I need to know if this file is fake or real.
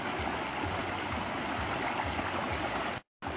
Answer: real